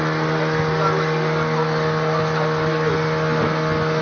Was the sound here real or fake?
real